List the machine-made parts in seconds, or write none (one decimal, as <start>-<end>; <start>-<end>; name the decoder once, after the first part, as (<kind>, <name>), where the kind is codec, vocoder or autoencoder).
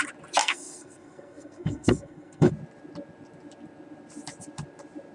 0.4-2.5 (codec, SNAC)